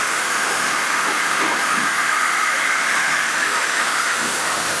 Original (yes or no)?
no